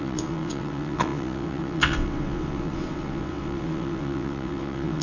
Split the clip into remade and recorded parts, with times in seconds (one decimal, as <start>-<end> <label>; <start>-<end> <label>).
0.0-5.0 remade